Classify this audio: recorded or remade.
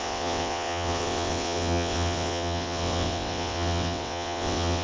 remade